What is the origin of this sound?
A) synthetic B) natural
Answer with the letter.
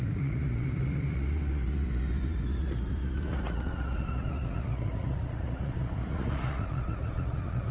A